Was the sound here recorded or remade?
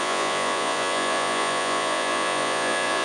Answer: remade